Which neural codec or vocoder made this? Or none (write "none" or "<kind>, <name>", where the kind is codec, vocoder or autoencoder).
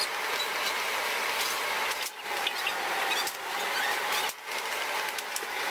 none